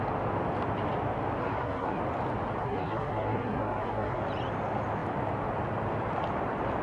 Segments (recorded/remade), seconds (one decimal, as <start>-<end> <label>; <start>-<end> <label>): 0.0-1.4 recorded; 1.4-2.0 remade; 2.0-2.6 recorded; 2.6-4.2 remade; 4.2-6.8 recorded